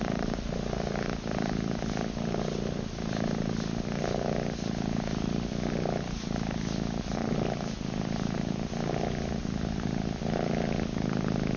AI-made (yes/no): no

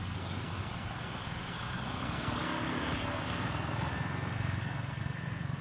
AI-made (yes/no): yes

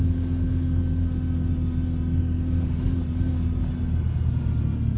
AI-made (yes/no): no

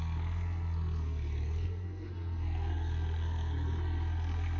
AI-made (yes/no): yes